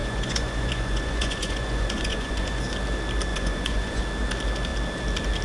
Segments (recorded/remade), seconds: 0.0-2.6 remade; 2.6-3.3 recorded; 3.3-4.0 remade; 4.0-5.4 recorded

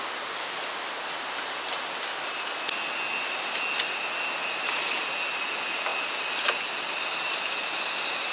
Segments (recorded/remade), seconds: 0.0-8.3 recorded

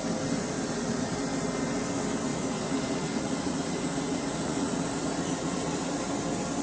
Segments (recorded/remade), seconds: 0.0-2.3 recorded; 2.3-6.0 remade; 6.0-6.6 recorded